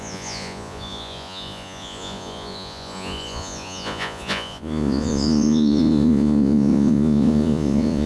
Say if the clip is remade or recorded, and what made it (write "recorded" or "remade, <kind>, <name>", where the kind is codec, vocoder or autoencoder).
remade, vocoder, Vocos